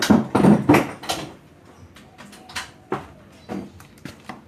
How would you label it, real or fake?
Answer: real